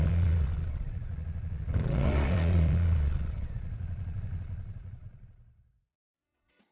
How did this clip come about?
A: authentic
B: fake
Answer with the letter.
B